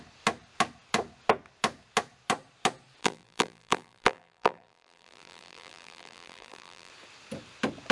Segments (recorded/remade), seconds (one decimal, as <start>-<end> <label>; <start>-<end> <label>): 0.0-3.0 recorded; 3.0-6.9 remade; 6.9-7.9 recorded